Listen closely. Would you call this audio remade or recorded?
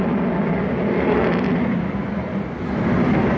recorded